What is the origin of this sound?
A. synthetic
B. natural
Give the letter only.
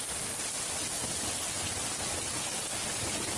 B